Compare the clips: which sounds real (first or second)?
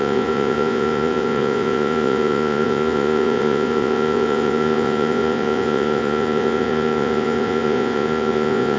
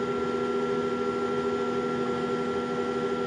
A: second